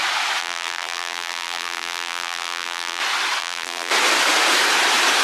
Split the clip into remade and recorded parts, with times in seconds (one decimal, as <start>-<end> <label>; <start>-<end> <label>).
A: 0.0-0.4 recorded; 0.4-3.0 remade; 3.0-3.4 recorded; 3.4-3.9 remade; 3.9-5.2 recorded